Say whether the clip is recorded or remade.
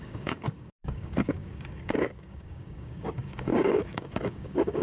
remade